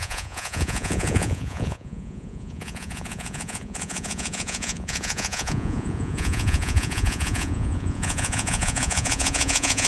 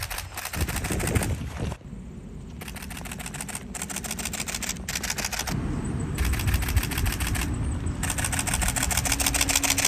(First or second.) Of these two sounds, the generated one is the first